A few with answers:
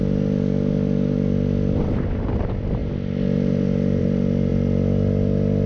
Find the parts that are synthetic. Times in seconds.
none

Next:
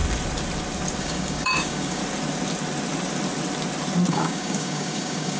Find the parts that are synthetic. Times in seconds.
1.0-2.0 (codec, DAC); 4.1-5.4